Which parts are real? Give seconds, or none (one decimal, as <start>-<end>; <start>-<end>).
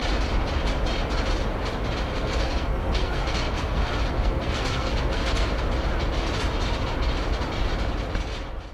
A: 0.0-2.1; 5.6-8.7